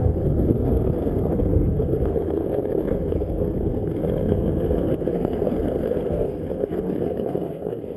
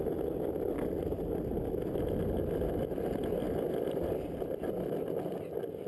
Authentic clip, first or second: second